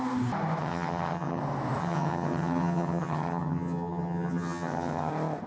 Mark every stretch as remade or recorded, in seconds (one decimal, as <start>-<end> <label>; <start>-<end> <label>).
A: 0.0-0.6 recorded; 0.6-1.4 remade; 1.4-1.8 recorded; 1.8-5.1 remade; 5.1-5.5 recorded